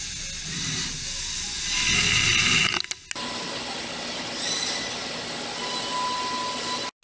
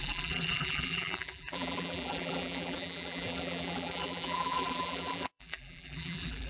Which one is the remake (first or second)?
second